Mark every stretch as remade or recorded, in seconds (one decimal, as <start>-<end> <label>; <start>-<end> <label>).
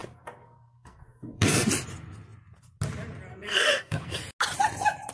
0.0-1.7 remade; 1.7-3.3 recorded; 3.3-4.2 remade; 4.2-5.1 recorded